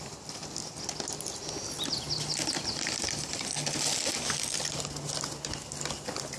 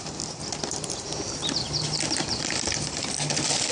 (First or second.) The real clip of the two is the first